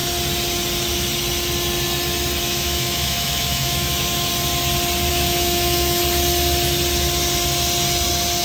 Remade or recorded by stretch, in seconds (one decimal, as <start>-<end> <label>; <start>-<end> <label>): 0.0-2.4 recorded; 2.4-4.3 remade; 4.3-5.1 recorded; 5.1-6.0 remade; 6.0-8.4 recorded

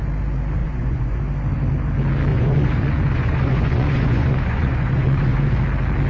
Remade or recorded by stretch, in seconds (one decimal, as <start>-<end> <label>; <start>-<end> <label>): 0.0-0.6 recorded; 0.6-1.2 remade; 1.2-2.3 recorded; 2.3-5.6 remade; 5.6-6.1 recorded

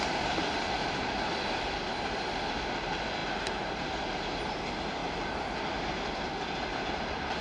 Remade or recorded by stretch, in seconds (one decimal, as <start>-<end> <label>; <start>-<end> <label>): 0.0-3.2 recorded; 3.2-3.7 remade; 3.7-5.0 recorded; 5.0-5.6 remade; 5.6-6.7 recorded; 6.7-7.4 remade

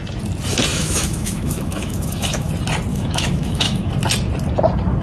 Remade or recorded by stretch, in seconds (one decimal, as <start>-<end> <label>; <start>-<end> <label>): 0.0-0.7 recorded; 0.7-2.5 remade; 2.5-2.9 recorded; 2.9-3.9 remade; 3.9-5.0 recorded

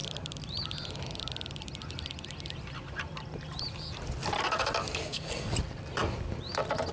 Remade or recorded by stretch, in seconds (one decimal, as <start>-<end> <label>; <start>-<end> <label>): 0.0-5.0 recorded; 5.0-5.5 remade; 5.5-6.9 recorded

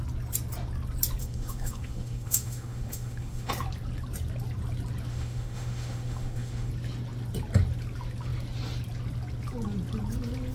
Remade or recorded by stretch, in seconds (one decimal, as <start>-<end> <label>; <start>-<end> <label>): 0.0-1.2 recorded; 1.2-3.5 remade; 3.5-5.1 recorded; 5.1-6.7 remade; 6.7-10.5 recorded

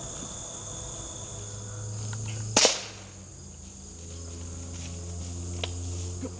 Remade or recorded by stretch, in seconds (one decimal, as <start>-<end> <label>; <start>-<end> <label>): 0.0-6.4 recorded

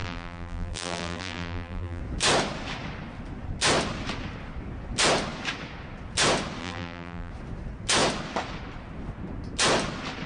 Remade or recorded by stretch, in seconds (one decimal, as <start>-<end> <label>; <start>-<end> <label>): 0.0-2.0 remade; 2.0-6.6 recorded; 6.6-7.3 remade; 7.3-10.3 recorded